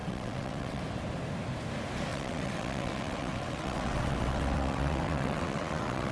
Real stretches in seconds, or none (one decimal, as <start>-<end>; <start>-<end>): 0.8-2.1